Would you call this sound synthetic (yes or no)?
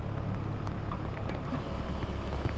no